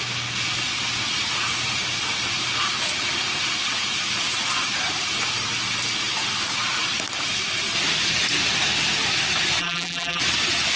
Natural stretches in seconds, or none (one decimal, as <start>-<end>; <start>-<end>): 0.0-9.6; 10.2-10.8